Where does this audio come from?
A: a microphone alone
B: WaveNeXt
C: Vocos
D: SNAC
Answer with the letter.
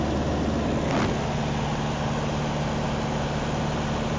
A